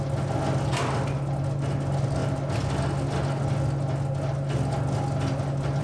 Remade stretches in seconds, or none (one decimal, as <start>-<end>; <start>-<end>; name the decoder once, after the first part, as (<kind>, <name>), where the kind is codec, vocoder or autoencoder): none